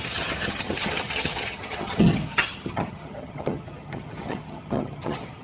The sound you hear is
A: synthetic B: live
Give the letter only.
A